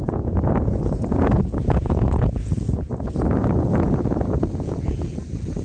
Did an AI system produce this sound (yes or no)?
yes